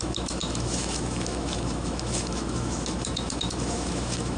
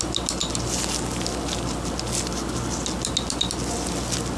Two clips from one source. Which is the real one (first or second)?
second